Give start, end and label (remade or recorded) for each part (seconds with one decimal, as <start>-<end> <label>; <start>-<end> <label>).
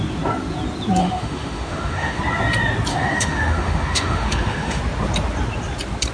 0.0-1.0 recorded; 1.0-2.2 remade; 2.2-2.9 recorded; 2.9-4.8 remade; 4.8-6.1 recorded